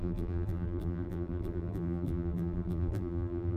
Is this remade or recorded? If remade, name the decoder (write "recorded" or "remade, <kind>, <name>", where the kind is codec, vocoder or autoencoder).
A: remade, vocoder, BigVGAN v2